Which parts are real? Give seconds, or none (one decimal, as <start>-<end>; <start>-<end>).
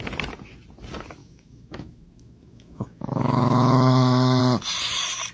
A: 0.0-1.2; 4.4-5.3